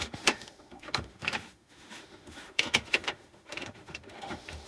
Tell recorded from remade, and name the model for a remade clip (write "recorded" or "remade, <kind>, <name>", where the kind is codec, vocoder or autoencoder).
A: remade, autoencoder, DAC-VAE